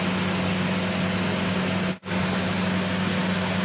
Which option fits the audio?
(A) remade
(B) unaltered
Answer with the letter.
B